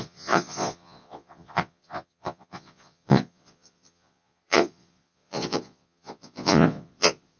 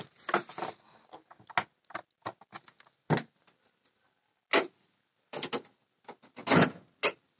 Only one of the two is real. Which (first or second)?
second